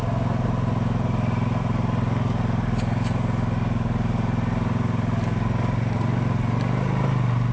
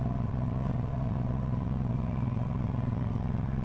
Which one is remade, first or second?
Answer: second